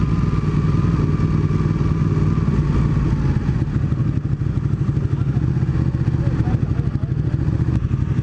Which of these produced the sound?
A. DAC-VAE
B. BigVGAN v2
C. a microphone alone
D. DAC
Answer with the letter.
C